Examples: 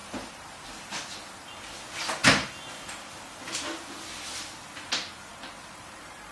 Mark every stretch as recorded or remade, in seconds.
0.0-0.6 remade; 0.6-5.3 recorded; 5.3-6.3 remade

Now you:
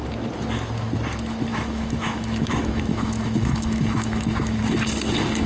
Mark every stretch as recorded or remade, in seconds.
0.0-1.5 recorded; 1.5-4.6 remade; 4.6-5.5 recorded

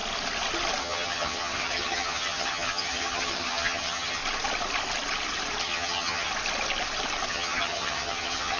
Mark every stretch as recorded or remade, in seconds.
0.0-0.8 recorded; 0.8-4.2 remade; 4.2-5.6 recorded; 5.6-6.3 remade; 6.3-7.3 recorded; 7.3-8.6 remade